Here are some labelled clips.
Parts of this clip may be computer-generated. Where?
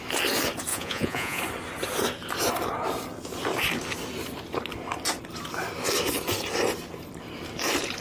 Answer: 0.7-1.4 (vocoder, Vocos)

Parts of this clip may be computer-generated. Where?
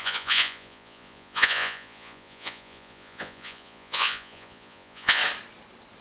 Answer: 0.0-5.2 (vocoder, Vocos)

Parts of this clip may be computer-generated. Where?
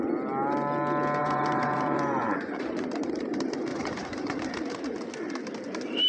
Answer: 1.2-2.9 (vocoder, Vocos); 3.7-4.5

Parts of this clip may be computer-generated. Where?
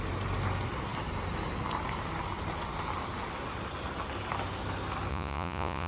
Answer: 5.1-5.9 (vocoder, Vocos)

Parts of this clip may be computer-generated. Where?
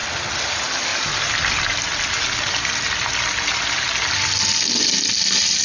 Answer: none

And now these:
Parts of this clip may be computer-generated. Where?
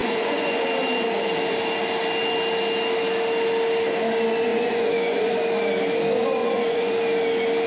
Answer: 0.0-0.6 (vocoder, Vocos); 4.5-5.3; 6.4-6.9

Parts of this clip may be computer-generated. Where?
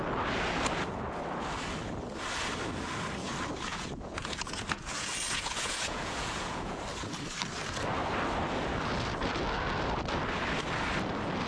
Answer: 3.7-6.8 (vocoder, Vocos)